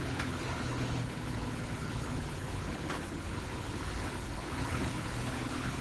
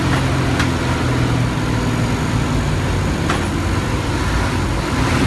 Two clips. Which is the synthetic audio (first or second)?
first